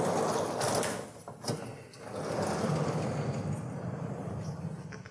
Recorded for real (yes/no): yes